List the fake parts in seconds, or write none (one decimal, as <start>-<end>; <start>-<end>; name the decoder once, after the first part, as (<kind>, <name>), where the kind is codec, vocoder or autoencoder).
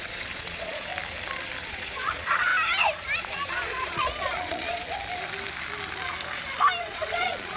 0.0-0.9 (vocoder, Vocos); 1.6-2.5; 3.2-4.8; 6.8-7.6